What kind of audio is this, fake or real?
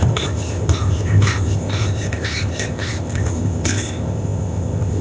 fake